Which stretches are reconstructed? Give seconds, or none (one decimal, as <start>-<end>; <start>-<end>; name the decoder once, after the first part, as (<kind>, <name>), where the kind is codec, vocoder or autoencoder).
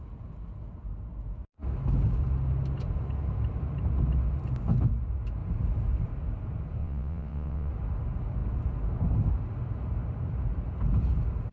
6.8-7.7 (vocoder, WaveNeXt)